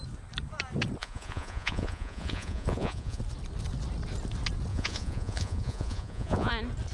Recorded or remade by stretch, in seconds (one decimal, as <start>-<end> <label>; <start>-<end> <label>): 0.0-1.0 recorded; 1.0-3.2 remade; 3.2-4.7 recorded; 4.7-6.5 remade; 6.5-6.9 recorded